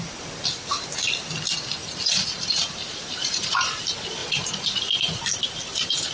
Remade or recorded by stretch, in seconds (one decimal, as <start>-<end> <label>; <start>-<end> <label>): 0.0-1.8 recorded; 1.8-2.7 remade; 2.7-3.2 recorded; 3.2-3.8 remade; 3.8-4.2 recorded; 4.2-5.2 remade; 5.2-6.1 recorded